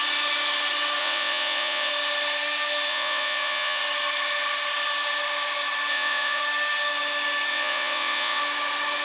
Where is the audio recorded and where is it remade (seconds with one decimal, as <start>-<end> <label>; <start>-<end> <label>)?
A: 0.0-1.0 recorded; 1.0-1.9 remade; 1.9-2.9 recorded; 2.9-3.8 remade; 3.8-5.9 recorded; 5.9-6.4 remade; 6.4-7.5 recorded; 7.5-8.4 remade; 8.4-9.0 recorded